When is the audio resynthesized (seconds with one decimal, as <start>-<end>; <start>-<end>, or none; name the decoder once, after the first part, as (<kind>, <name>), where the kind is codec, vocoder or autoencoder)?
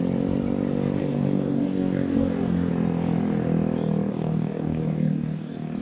1.0-2.7 (codec, DAC); 4.1-5.8